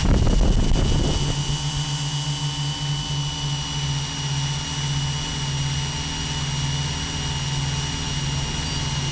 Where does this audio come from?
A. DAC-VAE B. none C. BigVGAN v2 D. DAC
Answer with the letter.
B